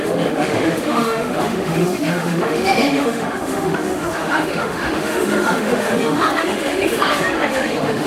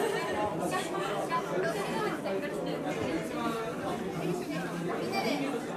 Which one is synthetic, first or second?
first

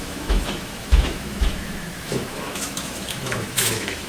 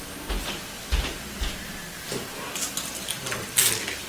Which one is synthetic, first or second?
first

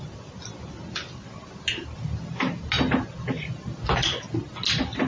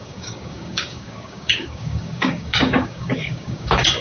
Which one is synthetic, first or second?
second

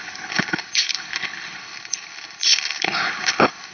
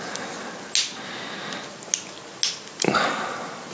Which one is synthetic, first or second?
first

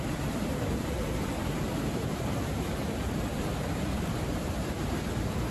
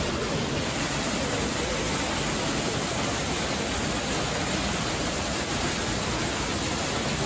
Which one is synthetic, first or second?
first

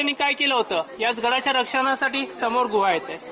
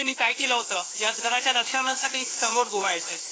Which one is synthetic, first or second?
second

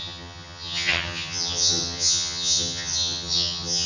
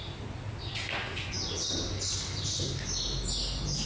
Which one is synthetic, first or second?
first